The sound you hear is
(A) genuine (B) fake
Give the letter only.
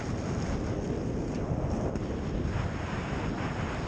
A